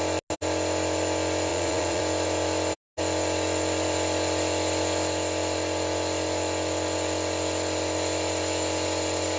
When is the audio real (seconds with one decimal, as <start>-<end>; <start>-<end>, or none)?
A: 0.0-1.5; 2.0-9.4